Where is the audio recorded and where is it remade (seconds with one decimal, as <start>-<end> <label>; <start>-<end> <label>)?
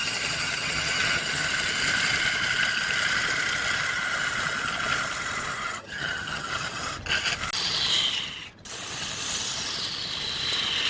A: 0.0-1.5 remade; 1.5-5.5 recorded; 5.5-6.8 remade; 6.8-10.9 recorded